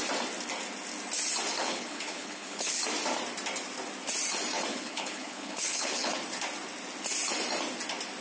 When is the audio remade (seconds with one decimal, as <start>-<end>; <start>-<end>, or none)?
1.6-2.8; 4.7-6.1

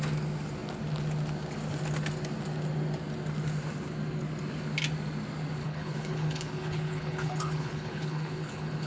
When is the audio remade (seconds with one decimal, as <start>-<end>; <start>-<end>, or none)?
5.6-8.9

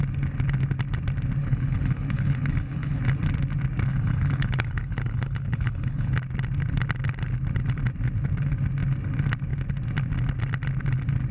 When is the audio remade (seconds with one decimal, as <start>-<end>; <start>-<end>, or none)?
1.4-3.0; 3.9-6.1